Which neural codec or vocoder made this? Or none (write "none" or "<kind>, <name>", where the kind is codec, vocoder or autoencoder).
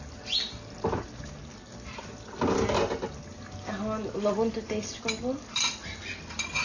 none